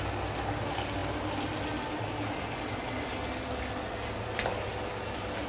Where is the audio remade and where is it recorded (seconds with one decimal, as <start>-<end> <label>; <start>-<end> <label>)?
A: 0.0-5.5 recorded